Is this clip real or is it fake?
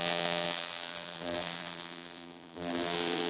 fake